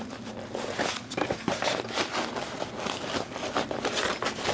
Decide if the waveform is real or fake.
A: real